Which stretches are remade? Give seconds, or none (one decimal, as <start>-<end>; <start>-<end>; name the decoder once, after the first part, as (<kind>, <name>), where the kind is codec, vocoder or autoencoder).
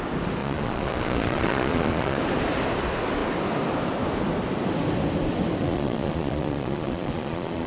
0.4-2.2 (vocoder, Vocos); 5.6-7.7